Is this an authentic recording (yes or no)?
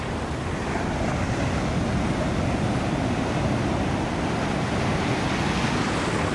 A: yes